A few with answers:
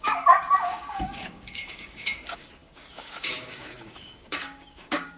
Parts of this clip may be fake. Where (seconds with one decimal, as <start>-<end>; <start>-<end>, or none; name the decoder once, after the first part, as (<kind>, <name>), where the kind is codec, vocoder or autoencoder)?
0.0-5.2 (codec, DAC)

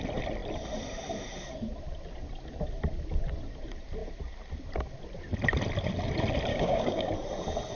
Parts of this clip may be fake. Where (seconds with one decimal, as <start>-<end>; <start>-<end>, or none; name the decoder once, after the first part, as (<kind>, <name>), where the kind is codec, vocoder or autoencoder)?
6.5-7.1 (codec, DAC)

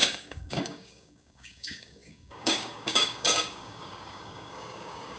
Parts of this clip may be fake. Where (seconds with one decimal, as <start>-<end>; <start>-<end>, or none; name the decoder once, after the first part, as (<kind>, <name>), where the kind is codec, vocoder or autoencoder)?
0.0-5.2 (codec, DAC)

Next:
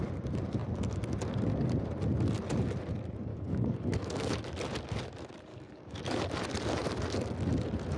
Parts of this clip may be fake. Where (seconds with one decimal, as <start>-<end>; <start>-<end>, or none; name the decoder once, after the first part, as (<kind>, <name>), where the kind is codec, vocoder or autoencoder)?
3.3-4.4 (codec, DAC); 5.5-6.2

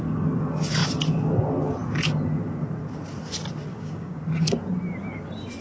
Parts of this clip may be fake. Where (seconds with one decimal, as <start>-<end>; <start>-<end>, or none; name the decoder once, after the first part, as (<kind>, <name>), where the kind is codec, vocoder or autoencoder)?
3.7-4.2 (codec, DAC)

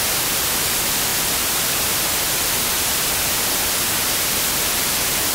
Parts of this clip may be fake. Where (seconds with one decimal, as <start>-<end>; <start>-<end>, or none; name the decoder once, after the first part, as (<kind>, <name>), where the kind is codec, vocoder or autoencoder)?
none